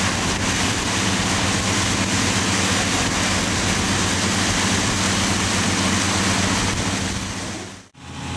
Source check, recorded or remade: recorded